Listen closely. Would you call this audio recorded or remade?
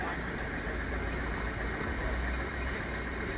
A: recorded